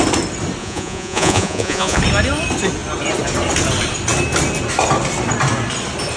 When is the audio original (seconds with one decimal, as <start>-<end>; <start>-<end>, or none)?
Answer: 0.0-0.6; 2.0-6.2

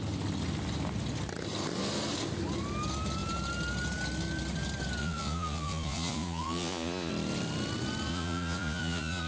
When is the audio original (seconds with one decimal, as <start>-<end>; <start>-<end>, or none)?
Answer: 0.0-5.0; 7.1-8.1

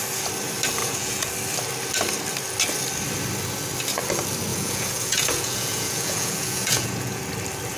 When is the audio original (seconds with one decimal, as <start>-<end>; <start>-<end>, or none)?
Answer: 0.0-0.8; 1.3-4.5; 7.2-7.8

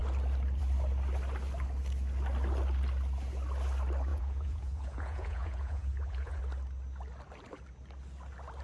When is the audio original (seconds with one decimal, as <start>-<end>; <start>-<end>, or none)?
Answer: 0.0-4.1; 6.4-8.6

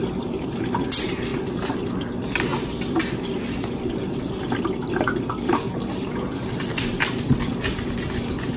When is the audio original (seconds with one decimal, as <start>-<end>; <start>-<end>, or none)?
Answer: 0.0-8.6

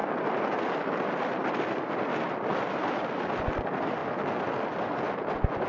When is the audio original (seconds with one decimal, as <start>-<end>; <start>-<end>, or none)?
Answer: 0.0-5.7

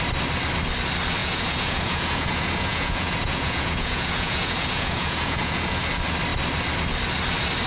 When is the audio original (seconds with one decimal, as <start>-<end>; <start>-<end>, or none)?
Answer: 0.0-1.2; 5.8-7.7